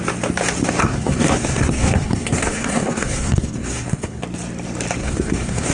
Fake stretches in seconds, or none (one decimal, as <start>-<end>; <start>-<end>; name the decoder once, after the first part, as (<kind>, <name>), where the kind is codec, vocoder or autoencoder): 0.8-4.2 (codec, SNAC); 5.0-5.7